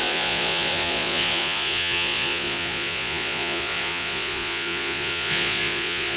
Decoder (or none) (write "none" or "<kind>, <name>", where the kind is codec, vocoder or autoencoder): vocoder, Vocos